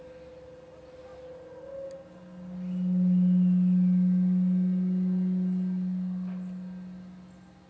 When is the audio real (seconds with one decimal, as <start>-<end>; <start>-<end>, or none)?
0.0-7.7